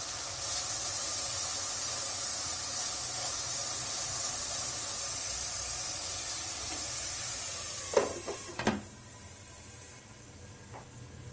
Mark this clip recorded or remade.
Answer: recorded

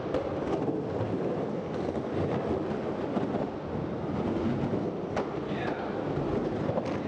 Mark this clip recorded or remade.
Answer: recorded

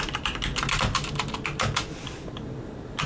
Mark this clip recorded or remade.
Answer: recorded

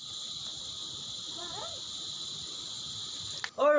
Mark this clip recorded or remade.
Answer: recorded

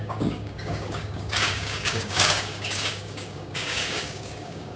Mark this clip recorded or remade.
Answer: remade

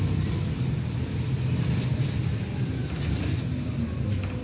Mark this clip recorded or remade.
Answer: recorded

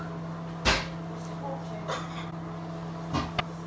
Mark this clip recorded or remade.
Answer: recorded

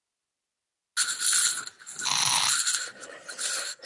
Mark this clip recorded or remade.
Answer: recorded